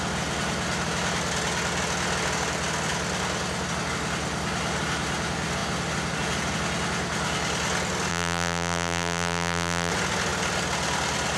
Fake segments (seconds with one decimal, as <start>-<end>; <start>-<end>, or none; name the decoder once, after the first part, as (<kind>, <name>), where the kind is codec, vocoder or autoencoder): 8.1-9.9 (vocoder, BigVGAN v2)